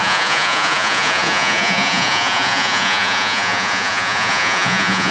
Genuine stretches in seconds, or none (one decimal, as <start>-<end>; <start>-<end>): none